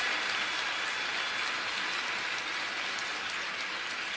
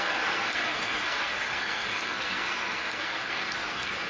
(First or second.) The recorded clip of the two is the first